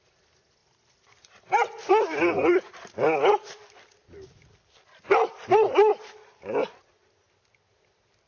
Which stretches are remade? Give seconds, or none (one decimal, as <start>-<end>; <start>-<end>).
none